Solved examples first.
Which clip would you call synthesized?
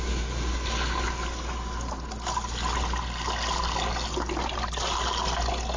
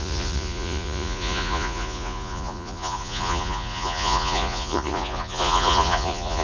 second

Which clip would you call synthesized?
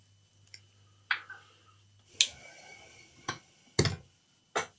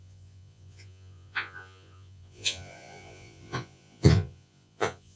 second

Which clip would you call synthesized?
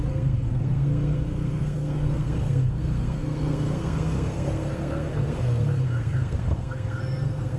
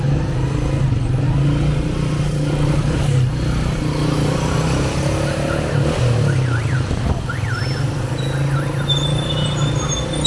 first